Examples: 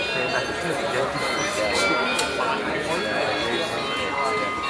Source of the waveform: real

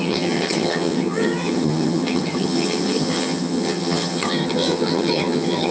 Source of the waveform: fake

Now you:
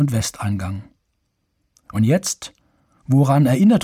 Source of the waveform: real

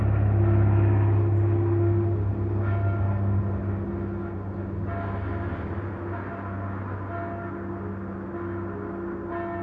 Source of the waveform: real